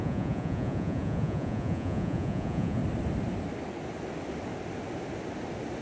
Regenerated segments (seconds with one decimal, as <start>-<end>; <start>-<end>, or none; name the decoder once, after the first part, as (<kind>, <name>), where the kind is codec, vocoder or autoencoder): 0.0-2.8 (vocoder, Vocos)